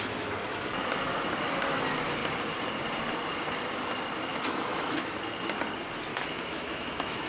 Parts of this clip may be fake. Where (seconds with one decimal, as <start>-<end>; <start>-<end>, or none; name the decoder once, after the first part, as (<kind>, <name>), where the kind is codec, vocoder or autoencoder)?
4.3-5.1 (autoencoder, DAC-VAE); 6.1-7.3